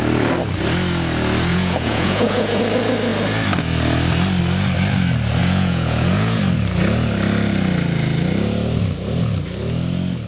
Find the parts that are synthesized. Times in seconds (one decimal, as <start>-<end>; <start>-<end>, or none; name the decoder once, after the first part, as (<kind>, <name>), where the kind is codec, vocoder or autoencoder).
1.5-2.6 (vocoder, Vocos); 5.4-6.4

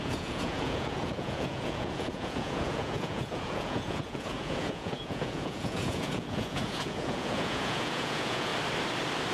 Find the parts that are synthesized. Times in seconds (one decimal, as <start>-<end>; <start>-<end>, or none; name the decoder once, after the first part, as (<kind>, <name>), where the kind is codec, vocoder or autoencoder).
0.0-8.5 (vocoder, Vocos)

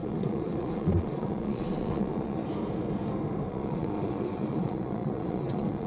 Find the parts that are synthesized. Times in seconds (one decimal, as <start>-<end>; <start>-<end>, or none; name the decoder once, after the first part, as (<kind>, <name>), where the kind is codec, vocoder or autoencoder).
0.0-2.4 (vocoder, Vocos); 3.5-5.9

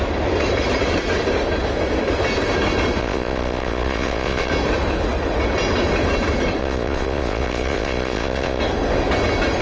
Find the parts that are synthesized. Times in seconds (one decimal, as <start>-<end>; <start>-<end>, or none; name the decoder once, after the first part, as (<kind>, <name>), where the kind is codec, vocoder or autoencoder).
3.0-4.5 (vocoder, Vocos); 6.6-8.6